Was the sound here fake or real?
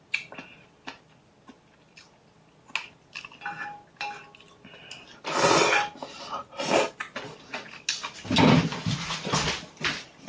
real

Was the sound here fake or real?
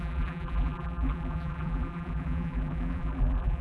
fake